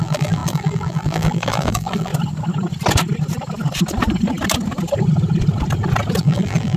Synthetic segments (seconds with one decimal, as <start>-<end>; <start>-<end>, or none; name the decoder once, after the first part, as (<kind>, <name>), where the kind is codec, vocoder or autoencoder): 0.0-2.1 (vocoder, BigVGAN v2); 6.2-6.8